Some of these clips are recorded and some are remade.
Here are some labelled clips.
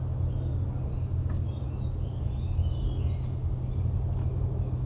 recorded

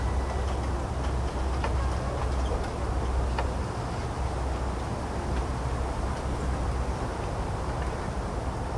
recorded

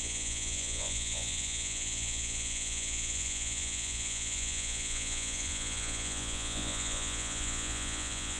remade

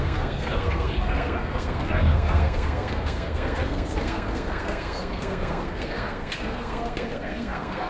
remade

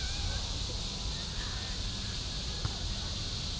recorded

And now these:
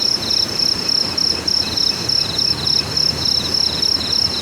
recorded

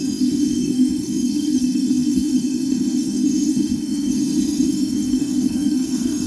remade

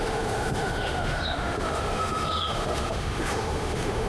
remade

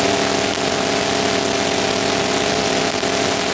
recorded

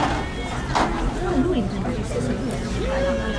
recorded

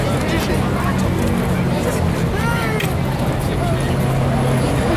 recorded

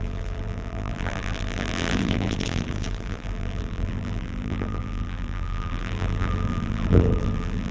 remade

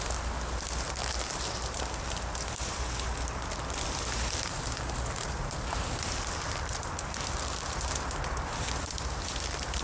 recorded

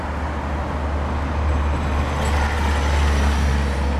recorded